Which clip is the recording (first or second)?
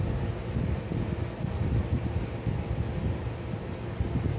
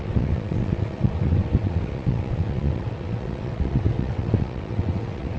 first